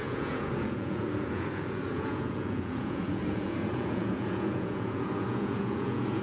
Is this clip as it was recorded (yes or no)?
no